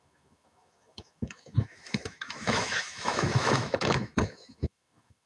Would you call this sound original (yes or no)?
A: no